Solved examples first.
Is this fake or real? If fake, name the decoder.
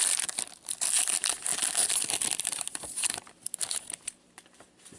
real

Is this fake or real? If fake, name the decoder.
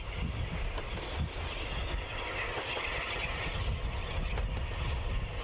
real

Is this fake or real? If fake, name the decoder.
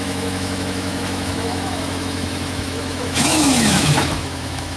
fake, autoencoder, DAC-VAE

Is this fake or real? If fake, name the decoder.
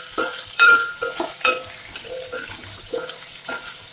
fake, vocoder, BigVGAN v2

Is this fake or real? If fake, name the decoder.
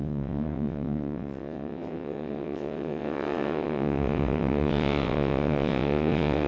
fake, vocoder, WaveNeXt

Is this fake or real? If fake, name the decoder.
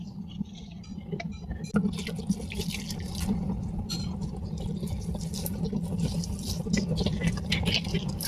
real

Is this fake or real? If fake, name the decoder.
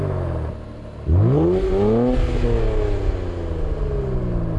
real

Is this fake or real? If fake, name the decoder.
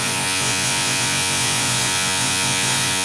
fake, vocoder, Vocos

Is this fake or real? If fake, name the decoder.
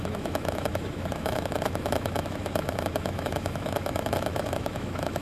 fake, autoencoder, DAC-VAE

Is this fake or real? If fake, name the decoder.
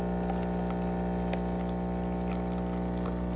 real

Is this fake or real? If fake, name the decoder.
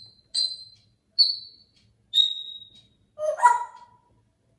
real